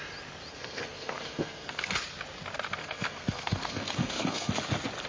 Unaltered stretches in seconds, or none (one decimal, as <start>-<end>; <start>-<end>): 0.0-0.5; 1.9-2.8; 4.5-5.1